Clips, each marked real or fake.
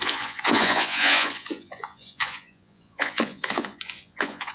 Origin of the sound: fake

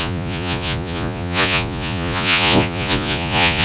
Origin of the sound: fake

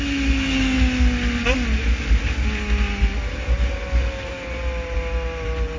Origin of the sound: real